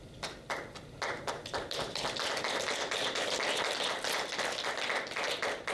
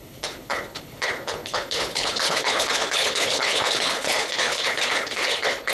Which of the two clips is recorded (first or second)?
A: first